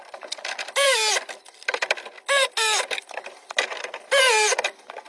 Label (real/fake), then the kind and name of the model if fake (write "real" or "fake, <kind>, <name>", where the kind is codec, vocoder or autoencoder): real